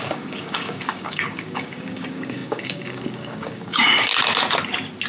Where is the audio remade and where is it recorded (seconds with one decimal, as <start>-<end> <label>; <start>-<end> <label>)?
0.0-4.1 remade; 4.1-5.1 recorded